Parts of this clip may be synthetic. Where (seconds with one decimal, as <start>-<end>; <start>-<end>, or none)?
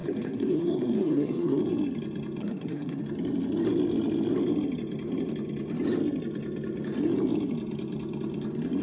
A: 0.0-1.6; 2.4-3.0